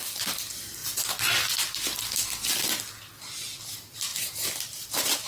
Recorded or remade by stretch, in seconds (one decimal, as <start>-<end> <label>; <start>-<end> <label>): 0.0-0.8 recorded; 0.8-3.0 remade; 3.0-5.3 recorded